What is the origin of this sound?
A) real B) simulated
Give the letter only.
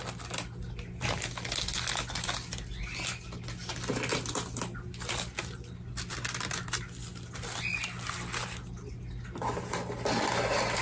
A